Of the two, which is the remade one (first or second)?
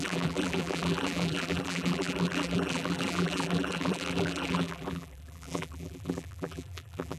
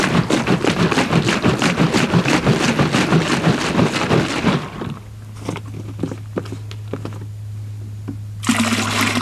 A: first